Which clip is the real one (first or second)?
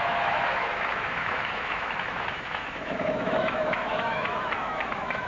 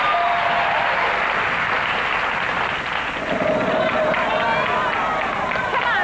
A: second